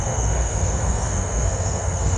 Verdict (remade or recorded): remade